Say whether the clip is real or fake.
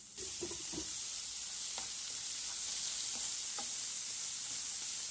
real